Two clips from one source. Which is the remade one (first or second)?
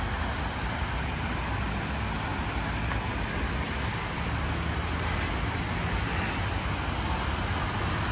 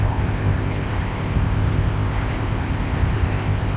second